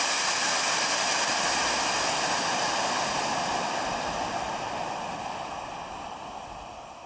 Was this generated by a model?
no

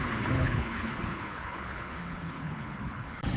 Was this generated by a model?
yes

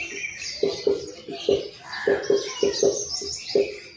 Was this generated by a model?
no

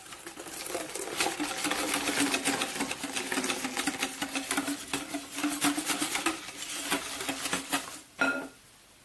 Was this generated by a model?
no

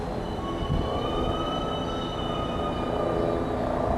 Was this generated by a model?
no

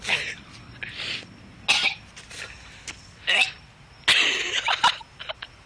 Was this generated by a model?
no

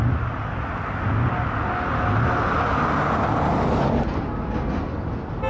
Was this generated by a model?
no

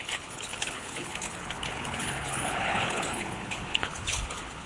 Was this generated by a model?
yes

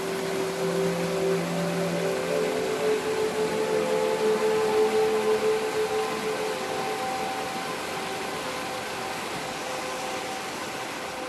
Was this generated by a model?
no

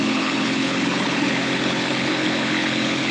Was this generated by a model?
yes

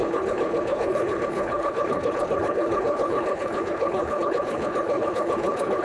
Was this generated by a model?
yes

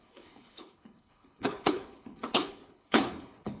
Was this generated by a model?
yes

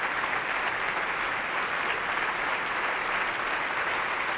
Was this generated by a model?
no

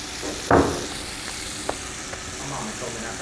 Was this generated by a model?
no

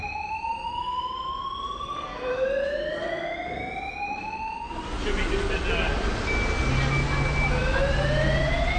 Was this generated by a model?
no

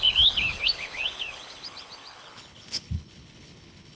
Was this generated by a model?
yes